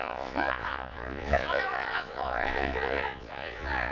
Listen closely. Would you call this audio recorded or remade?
remade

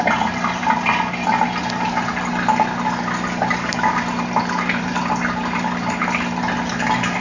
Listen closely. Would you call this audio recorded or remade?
recorded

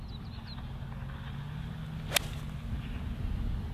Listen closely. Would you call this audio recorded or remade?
recorded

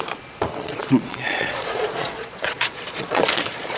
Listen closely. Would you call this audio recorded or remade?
remade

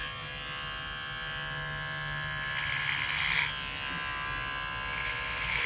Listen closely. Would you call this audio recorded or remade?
recorded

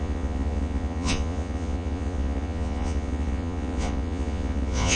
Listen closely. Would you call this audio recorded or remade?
remade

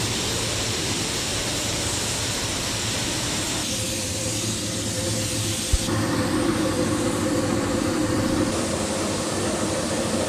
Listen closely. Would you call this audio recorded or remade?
recorded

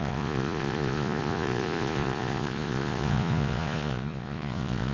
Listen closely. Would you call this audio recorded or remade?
remade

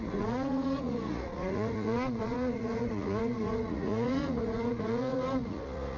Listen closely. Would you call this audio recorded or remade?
remade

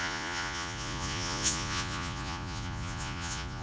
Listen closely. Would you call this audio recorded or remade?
remade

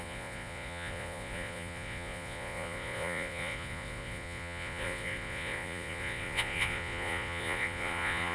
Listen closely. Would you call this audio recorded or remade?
remade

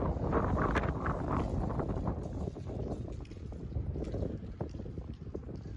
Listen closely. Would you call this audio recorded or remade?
recorded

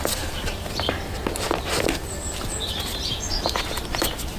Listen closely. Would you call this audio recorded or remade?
recorded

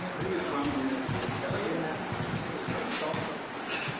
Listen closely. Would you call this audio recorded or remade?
recorded